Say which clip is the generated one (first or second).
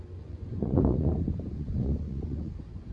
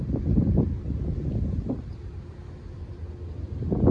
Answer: first